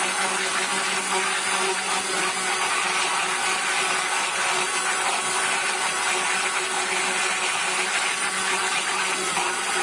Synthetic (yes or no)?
no